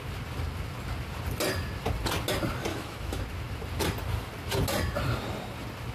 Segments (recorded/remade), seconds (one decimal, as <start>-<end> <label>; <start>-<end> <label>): 0.0-2.7 recorded; 2.7-3.2 remade; 3.2-5.9 recorded